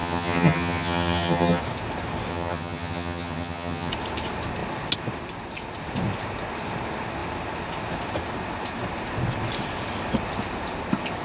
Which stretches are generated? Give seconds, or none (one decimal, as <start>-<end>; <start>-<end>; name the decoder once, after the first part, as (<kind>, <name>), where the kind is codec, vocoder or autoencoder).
0.0-1.6 (vocoder, HiFi-GAN); 2.3-3.9